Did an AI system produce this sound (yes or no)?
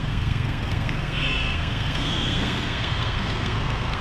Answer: yes